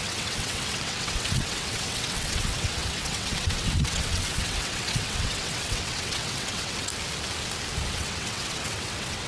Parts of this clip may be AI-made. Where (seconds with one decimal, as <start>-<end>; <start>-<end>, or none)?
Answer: 0.0-6.9; 7.9-9.3